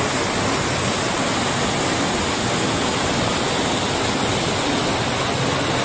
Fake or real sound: real